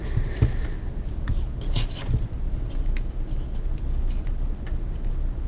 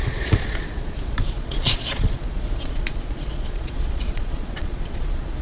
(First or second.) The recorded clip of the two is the first